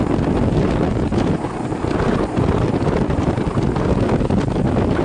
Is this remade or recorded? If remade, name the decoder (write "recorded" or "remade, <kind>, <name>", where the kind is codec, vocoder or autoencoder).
recorded